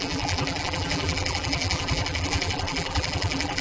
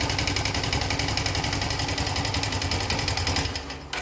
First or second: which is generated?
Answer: first